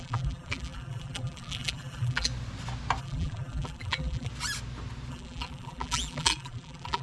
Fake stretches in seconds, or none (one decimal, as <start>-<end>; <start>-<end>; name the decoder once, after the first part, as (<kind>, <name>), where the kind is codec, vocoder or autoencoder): 0.0-2.3 (vocoder, BigVGAN v2); 3.0-4.3; 5.1-7.0